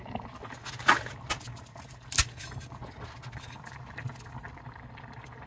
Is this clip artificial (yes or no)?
no